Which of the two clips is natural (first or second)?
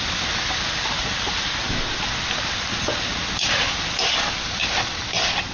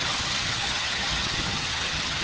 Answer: first